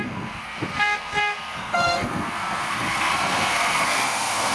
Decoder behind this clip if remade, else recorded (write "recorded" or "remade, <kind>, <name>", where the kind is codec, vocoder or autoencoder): remade, codec, SNAC